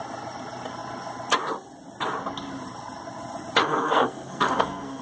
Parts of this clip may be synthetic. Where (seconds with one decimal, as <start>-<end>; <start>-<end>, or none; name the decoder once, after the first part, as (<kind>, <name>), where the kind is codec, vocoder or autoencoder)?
3.6-5.0 (codec, SNAC)